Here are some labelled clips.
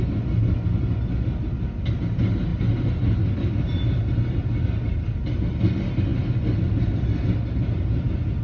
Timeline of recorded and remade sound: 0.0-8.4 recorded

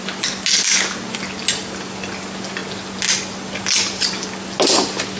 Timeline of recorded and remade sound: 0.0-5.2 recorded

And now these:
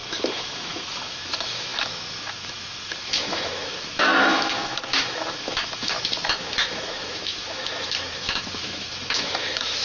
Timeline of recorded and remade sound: 0.0-9.8 remade

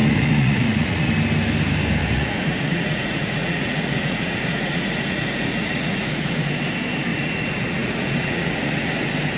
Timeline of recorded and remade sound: 0.0-1.1 remade; 1.1-2.0 recorded; 2.0-6.5 remade; 6.5-7.1 recorded; 7.1-8.9 remade; 8.9-9.4 recorded

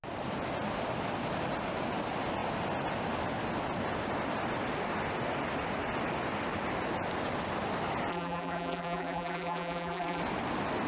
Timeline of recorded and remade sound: 0.0-8.1 recorded; 8.1-10.2 remade; 10.2-10.9 recorded

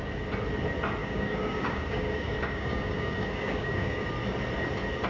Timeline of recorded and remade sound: 0.0-1.0 recorded; 1.0-4.1 remade; 4.1-5.1 recorded

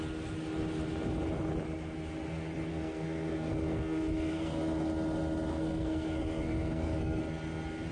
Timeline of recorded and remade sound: 0.0-2.7 recorded; 2.7-4.6 remade; 4.6-5.5 recorded; 5.5-7.2 remade; 7.2-7.9 recorded